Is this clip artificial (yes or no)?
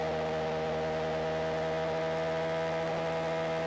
no